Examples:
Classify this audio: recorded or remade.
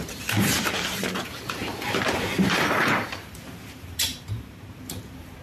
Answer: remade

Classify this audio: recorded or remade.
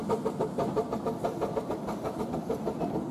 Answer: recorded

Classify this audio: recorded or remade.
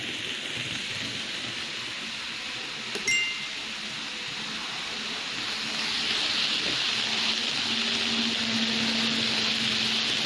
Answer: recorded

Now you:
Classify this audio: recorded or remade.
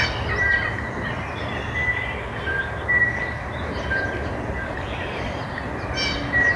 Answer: recorded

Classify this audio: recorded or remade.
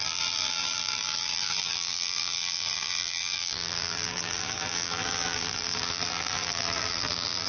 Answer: remade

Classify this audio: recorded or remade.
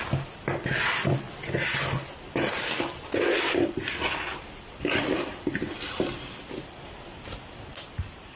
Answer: recorded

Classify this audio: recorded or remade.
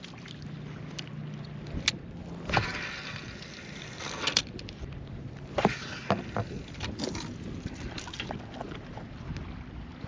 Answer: recorded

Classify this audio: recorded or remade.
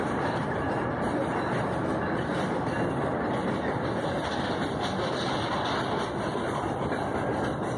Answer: recorded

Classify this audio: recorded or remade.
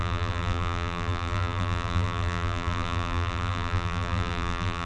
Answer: remade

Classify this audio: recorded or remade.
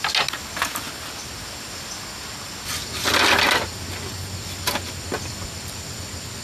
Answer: recorded